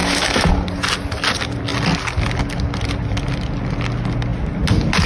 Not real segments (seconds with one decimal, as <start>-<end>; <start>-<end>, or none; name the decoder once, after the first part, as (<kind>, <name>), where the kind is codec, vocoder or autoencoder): 0.0-0.5 (autoencoder, DAC-VAE)